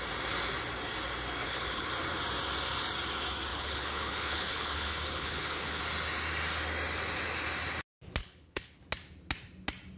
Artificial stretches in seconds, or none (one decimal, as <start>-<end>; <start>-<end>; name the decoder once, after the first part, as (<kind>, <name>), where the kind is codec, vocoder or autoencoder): 1.4-1.9 (codec, HILCodec); 3.5-5.8; 8.2-8.8